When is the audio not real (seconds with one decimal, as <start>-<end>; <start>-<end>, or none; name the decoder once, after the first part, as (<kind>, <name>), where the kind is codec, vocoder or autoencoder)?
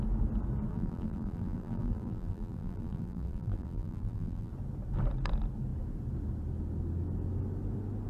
0.7-4.5 (vocoder, BigVGAN v2)